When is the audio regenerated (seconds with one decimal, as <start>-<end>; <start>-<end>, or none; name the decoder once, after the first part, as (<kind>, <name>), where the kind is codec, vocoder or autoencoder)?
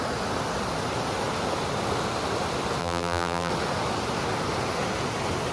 2.8-3.5 (vocoder, BigVGAN v2)